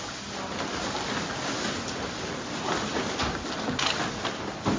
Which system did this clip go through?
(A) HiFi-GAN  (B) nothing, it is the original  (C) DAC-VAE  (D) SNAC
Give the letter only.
B